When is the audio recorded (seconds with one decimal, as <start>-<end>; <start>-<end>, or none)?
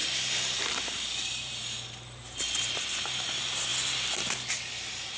3.7-4.3